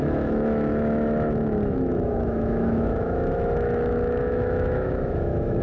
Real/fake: fake